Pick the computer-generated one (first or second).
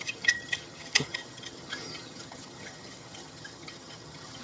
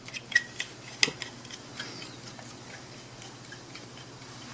first